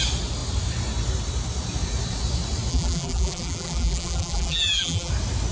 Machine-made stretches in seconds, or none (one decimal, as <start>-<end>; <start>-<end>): 2.7-5.1